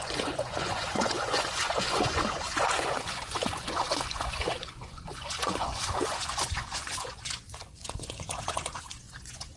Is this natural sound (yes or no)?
no